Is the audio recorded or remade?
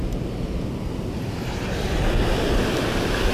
recorded